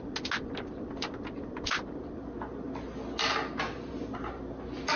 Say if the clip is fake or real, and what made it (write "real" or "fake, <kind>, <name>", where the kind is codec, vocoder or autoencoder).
real